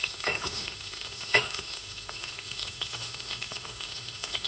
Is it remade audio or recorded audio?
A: remade